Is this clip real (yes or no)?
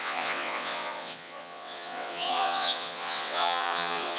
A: no